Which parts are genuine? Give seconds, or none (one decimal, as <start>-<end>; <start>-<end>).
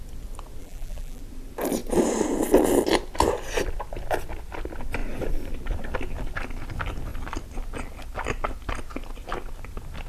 0.0-0.6; 1.2-10.1